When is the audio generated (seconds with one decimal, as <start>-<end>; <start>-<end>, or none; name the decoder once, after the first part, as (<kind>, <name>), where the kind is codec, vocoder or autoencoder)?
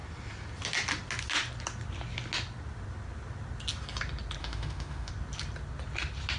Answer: 4.4-5.1 (autoencoder, DAC-VAE)